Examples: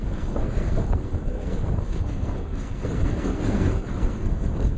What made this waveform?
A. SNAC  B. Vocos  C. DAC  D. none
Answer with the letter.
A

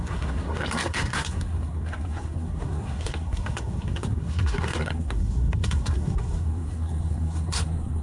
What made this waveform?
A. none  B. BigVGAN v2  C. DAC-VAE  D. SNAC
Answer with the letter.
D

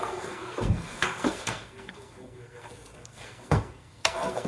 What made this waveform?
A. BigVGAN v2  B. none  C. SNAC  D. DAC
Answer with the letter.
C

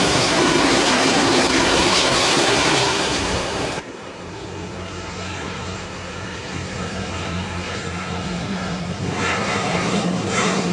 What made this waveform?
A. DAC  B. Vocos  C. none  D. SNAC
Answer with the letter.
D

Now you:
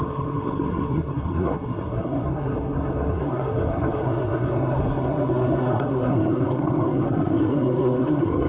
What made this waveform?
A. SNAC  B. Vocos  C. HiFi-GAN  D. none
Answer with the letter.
A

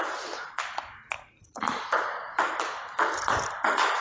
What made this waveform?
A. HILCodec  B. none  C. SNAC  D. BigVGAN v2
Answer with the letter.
B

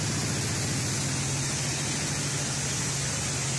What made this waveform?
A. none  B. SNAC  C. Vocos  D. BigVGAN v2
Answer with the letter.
A